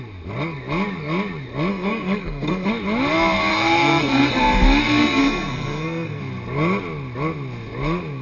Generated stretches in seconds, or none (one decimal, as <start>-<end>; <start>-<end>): 1.7-2.7; 3.5-4.3; 4.8-6.2